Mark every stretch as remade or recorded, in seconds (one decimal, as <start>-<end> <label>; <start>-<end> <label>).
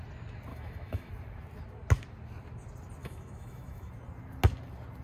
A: 0.0-0.5 recorded; 0.5-1.1 remade; 1.1-3.0 recorded; 3.0-3.9 remade; 3.9-5.0 recorded